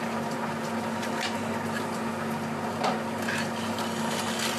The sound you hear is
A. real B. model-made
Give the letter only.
A